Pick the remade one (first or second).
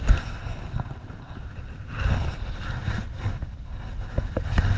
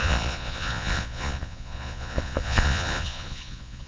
second